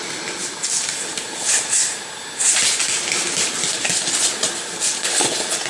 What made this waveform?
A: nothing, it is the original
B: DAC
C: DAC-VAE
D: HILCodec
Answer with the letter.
A